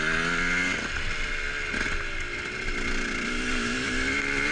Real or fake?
real